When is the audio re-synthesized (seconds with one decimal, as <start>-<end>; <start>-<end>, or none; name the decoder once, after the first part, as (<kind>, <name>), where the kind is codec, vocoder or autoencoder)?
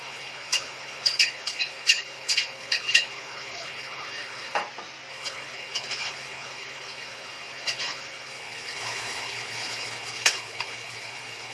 0.0-4.6 (codec, HILCodec); 5.1-11.5